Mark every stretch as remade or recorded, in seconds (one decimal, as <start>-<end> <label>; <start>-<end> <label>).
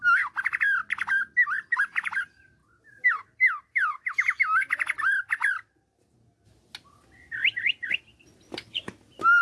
0.0-9.4 recorded